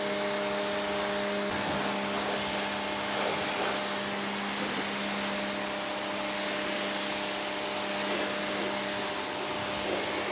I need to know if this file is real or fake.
real